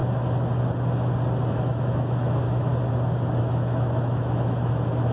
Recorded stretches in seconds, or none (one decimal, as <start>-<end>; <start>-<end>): 0.0-1.5; 2.7-3.4